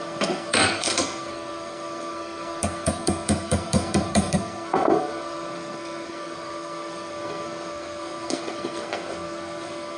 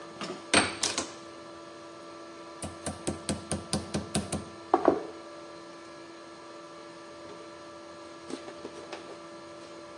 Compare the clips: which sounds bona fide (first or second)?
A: second